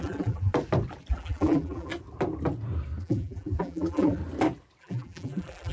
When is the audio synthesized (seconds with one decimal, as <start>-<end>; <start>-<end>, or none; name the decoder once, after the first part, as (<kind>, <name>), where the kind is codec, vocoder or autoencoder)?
0.0-0.5 (vocoder, BigVGAN v2); 1.1-1.9; 3.0-4.2; 4.8-5.7